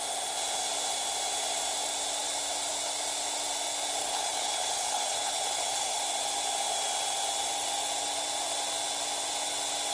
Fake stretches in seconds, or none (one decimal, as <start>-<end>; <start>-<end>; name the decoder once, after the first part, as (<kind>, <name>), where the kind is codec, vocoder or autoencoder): 4.0-6.0 (codec, HILCodec)